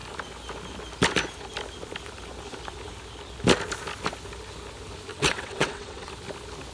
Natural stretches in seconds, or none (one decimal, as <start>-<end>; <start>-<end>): 0.0-5.1; 6.1-6.7